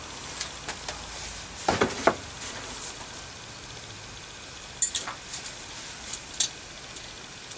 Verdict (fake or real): real